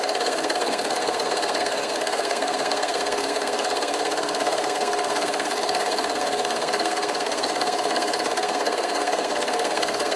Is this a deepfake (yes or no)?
yes